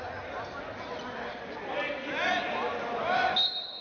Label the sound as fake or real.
real